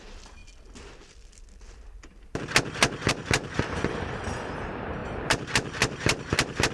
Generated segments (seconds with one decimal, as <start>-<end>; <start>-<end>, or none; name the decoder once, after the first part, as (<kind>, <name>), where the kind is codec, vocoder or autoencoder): 0.0-0.4 (vocoder, BigVGAN v2); 3.1-6.7